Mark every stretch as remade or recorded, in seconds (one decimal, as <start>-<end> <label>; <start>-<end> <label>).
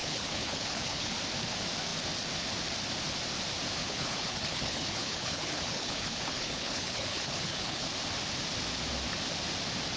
0.0-1.1 remade; 1.1-3.8 recorded; 3.8-7.9 remade; 7.9-10.0 recorded